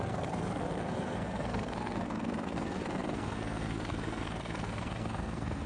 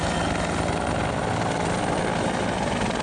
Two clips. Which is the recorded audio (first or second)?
second